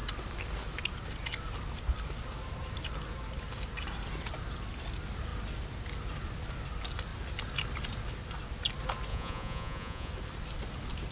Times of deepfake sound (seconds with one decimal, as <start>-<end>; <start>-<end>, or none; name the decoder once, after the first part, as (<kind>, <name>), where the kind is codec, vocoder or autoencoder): 9.1-10.1 (vocoder, Vocos)